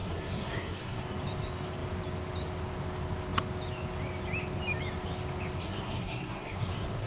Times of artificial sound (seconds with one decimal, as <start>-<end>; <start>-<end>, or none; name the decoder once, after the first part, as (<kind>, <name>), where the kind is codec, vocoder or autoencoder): 0.0-1.0 (codec, SNAC); 5.6-7.1